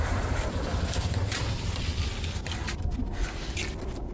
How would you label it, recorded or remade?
recorded